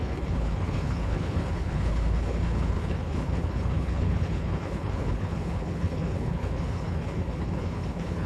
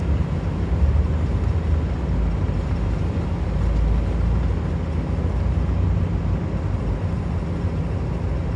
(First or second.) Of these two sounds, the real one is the second